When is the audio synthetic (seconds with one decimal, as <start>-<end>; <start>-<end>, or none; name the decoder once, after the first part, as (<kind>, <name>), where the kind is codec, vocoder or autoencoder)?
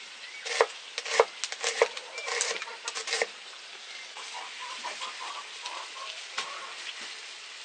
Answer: 3.7-4.4 (codec, DAC)